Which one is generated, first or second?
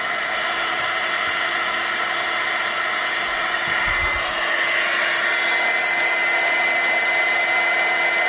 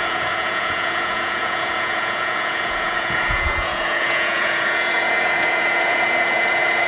second